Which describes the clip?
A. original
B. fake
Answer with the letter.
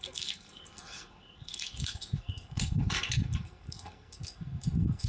B